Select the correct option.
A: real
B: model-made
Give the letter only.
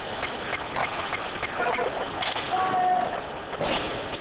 A